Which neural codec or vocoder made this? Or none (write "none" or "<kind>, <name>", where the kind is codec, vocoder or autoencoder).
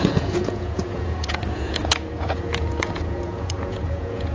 vocoder, Vocos